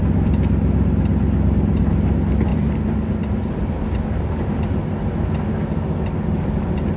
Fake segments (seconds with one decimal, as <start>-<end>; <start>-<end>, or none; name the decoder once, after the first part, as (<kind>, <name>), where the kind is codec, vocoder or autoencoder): 2.5-4.6 (vocoder, BigVGAN v2)